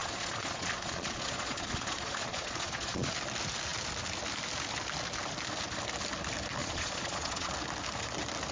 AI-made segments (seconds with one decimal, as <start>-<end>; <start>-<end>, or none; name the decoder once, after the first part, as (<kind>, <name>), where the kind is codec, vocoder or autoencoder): 0.0-3.1 (vocoder, Vocos); 6.6-7.5